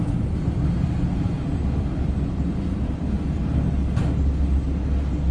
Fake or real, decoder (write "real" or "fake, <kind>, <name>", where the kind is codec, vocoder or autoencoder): real